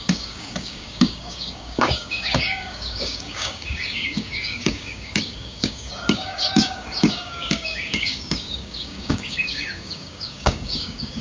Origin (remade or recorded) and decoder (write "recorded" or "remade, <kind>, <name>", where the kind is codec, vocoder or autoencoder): remade, codec, DAC